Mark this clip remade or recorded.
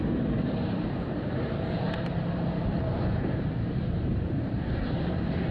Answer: remade